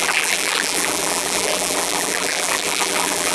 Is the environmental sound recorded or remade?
remade